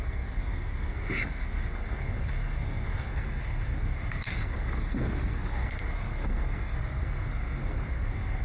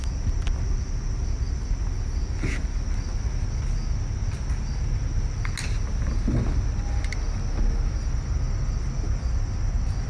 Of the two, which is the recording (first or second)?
second